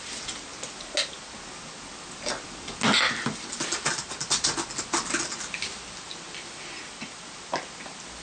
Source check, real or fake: real